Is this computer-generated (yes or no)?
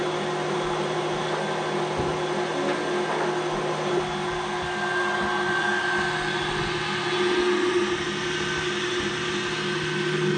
no